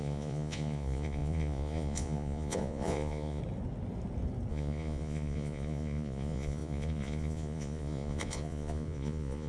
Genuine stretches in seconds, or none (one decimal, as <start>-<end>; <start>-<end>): 3.4-4.5